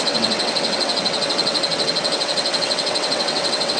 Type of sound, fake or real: fake